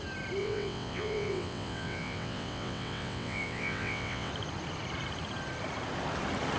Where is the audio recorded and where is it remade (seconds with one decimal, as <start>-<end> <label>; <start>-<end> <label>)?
0.0-0.4 recorded; 0.4-4.3 remade; 4.3-6.6 recorded